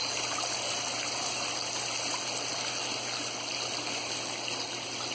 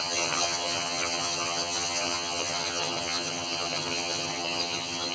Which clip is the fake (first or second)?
second